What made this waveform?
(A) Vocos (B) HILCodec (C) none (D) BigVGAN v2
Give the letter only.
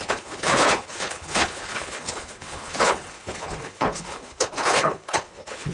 B